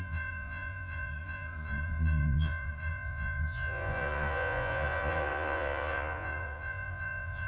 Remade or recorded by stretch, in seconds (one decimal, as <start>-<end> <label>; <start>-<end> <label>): 0.0-7.5 remade